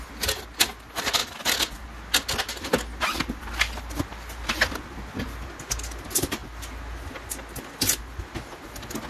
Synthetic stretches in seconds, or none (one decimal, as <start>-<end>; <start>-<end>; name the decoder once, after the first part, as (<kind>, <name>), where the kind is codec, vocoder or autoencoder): none